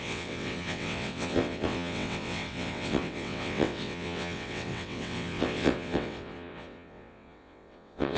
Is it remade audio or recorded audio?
remade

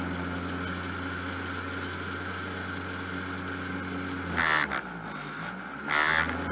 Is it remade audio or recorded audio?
recorded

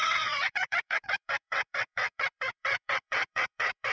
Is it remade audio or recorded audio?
remade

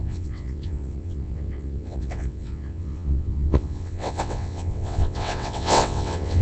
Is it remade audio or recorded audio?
remade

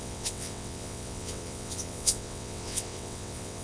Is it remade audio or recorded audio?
remade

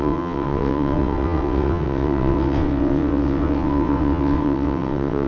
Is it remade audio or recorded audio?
remade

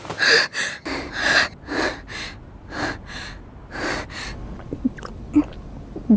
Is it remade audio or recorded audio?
recorded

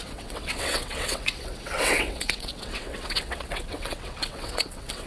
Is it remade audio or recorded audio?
remade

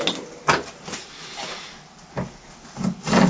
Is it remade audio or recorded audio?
recorded